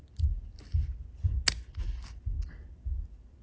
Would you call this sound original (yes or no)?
yes